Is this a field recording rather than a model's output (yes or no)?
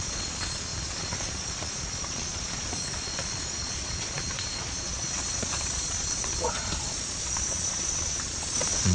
no